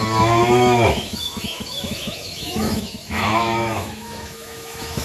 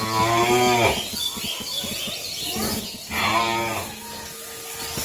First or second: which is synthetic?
first